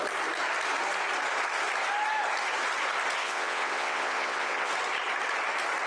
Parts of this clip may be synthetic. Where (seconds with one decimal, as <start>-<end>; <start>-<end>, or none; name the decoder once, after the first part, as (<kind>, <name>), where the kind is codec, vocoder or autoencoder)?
3.2-4.7 (vocoder, WaveNeXt)